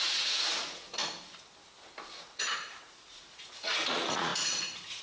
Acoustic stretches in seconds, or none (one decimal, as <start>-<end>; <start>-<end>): 1.0-2.2